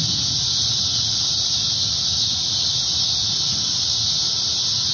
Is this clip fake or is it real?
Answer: fake